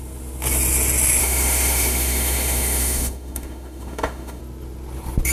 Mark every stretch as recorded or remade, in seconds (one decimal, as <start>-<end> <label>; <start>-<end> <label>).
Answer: 0.0-1.2 recorded; 1.2-4.4 remade; 4.4-5.3 recorded